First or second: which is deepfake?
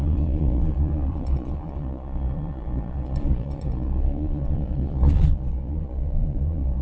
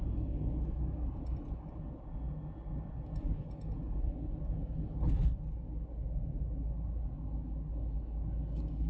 first